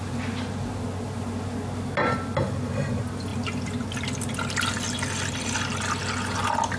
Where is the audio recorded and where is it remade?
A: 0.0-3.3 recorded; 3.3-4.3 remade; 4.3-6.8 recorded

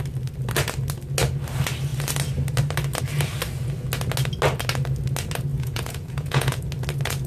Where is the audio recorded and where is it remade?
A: 0.0-5.5 recorded; 5.5-6.6 remade; 6.6-7.3 recorded

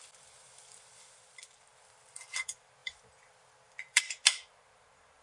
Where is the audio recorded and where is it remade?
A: 0.0-5.2 remade